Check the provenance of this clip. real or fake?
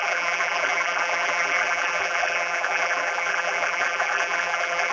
fake